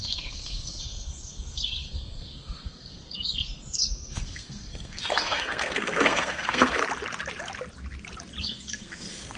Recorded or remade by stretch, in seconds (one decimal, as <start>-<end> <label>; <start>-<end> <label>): 0.0-6.8 remade; 6.8-8.4 recorded; 8.4-9.4 remade